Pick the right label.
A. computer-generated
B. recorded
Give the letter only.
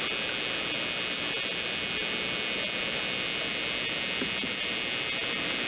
B